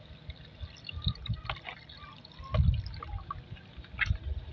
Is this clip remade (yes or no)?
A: no